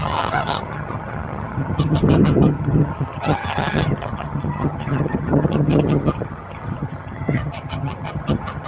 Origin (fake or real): fake